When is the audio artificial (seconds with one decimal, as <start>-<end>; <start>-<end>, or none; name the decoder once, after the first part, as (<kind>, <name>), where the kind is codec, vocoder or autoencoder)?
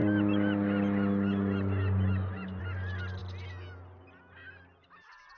none